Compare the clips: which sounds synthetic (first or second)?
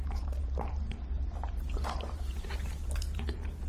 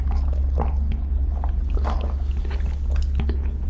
first